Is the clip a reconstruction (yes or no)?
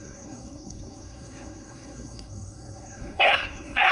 yes